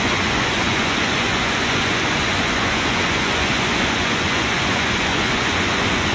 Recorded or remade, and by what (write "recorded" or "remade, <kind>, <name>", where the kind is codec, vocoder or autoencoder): remade, vocoder, Vocos